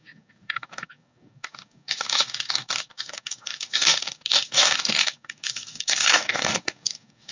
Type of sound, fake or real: fake